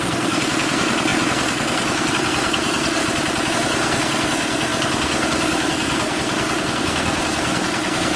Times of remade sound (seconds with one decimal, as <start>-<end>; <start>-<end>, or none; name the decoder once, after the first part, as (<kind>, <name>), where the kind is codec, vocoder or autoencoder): 0.0-3.0 (codec, SNAC); 3.5-8.2